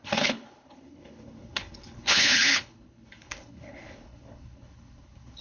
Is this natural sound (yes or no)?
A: no